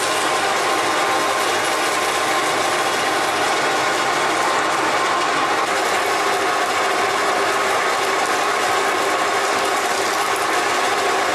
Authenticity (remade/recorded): recorded